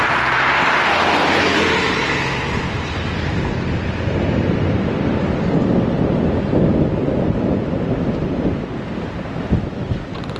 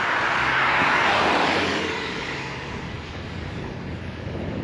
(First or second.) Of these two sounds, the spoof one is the second